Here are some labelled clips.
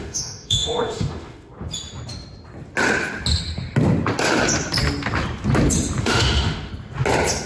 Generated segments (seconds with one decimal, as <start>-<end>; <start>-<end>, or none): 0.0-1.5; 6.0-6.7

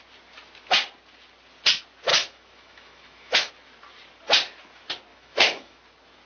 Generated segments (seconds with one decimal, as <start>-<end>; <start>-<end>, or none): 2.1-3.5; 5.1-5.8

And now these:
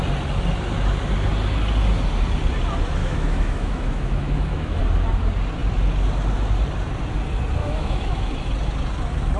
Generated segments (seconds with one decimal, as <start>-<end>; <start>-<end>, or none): 3.0-4.8; 7.6-8.5